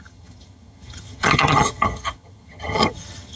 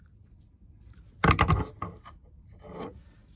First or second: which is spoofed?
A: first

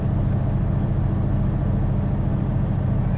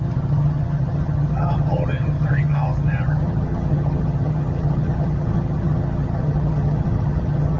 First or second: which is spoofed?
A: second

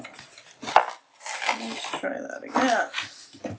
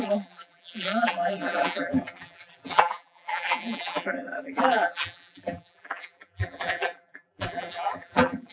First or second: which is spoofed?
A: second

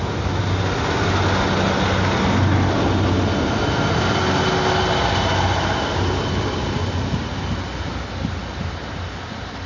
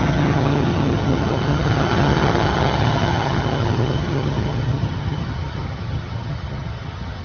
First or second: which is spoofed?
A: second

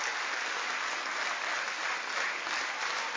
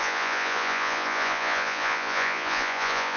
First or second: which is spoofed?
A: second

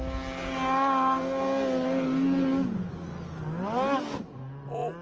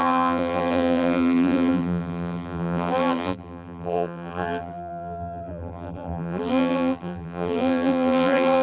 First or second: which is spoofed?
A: second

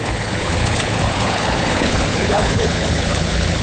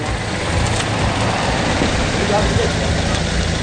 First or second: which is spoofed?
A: first